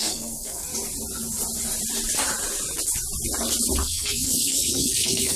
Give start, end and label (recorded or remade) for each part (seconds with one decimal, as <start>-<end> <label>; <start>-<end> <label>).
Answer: 0.0-0.7 remade; 0.7-3.8 recorded; 3.8-5.4 remade